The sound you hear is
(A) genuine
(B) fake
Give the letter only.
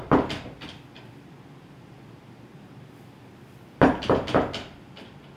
A